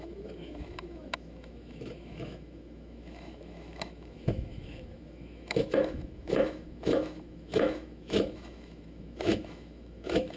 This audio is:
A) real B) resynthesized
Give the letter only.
B